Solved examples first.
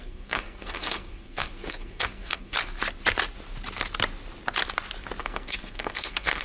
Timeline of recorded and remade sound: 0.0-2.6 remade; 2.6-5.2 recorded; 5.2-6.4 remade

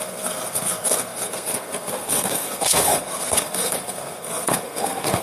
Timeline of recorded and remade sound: 0.0-5.2 remade

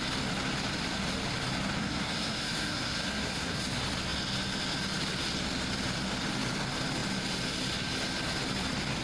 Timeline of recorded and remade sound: 0.0-1.8 recorded; 1.8-3.6 remade; 3.6-9.0 recorded

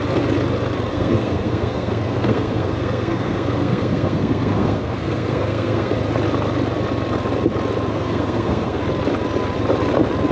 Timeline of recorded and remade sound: 0.0-0.9 recorded; 0.9-5.9 remade; 5.9-7.9 recorded; 7.9-8.8 remade; 8.8-10.3 recorded

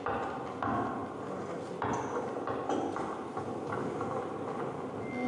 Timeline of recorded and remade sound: 0.0-5.3 recorded

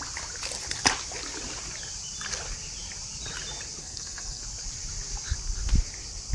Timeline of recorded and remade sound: 0.0-3.8 recorded; 3.8-4.4 remade; 4.4-6.3 recorded